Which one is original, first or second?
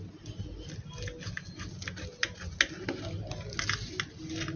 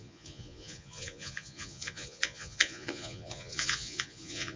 first